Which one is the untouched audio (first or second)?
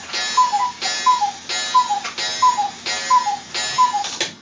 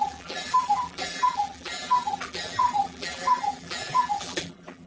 first